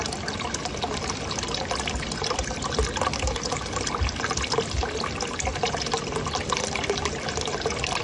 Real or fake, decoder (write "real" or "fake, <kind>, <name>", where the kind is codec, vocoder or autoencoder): real